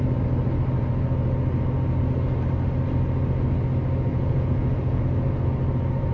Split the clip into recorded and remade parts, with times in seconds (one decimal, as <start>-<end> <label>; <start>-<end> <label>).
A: 0.0-4.1 recorded; 4.1-5.0 remade; 5.0-6.1 recorded